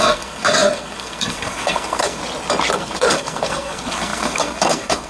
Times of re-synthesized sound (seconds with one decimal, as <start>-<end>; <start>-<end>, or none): 0.0-2.2; 2.7-5.1